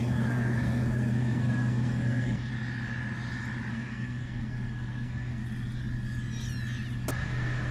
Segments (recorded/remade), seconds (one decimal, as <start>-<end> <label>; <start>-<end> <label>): 0.0-2.5 remade; 2.5-3.7 recorded; 3.7-5.4 remade; 5.4-7.1 recorded; 7.1-7.7 remade